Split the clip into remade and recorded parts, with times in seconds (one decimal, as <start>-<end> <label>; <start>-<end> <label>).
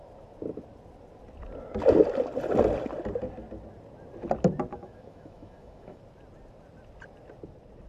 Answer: 0.0-4.7 recorded; 4.7-6.0 remade; 6.0-7.9 recorded